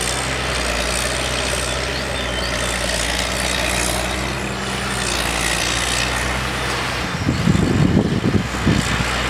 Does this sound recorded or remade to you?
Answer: recorded